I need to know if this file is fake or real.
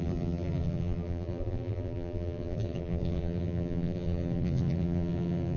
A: fake